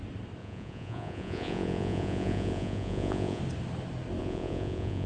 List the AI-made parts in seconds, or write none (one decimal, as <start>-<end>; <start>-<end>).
0.4-3.4; 4.2-5.1